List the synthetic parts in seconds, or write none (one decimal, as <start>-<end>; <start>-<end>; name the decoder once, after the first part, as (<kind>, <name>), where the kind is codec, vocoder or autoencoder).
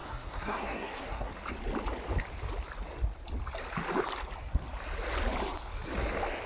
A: 0.0-1.3 (codec, SNAC)